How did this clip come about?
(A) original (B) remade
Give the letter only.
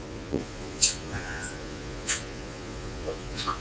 B